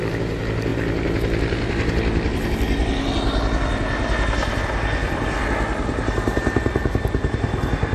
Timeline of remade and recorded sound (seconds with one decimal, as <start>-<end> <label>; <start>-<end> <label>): 0.0-7.9 recorded